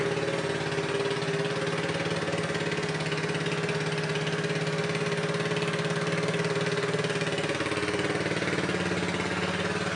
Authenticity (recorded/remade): recorded